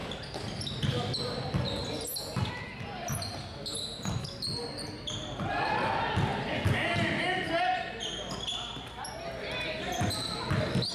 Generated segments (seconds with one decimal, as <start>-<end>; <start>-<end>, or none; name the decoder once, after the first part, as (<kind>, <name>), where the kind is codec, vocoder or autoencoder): none